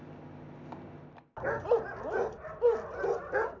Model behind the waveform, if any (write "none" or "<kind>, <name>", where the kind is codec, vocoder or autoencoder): none